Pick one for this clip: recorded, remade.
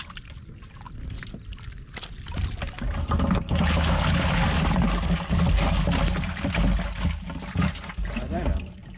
recorded